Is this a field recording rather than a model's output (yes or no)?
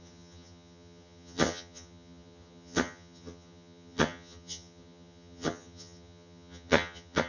no